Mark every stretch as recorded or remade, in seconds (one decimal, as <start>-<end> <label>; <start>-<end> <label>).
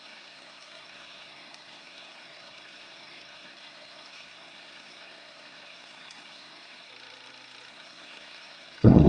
0.0-6.9 remade; 6.9-7.7 recorded; 7.7-9.1 remade